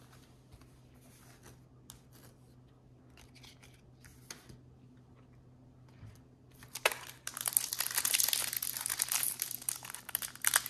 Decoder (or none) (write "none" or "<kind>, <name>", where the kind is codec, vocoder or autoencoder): none